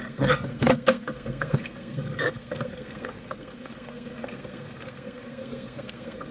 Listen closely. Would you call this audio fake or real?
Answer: fake